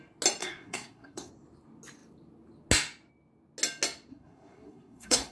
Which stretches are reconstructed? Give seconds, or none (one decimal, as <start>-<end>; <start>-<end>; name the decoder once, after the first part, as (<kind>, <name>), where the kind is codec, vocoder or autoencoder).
0.4-1.3 (codec, SNAC); 4.1-5.3